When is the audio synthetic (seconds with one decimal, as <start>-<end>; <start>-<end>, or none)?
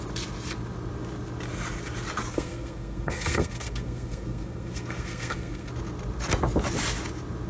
2.3-5.7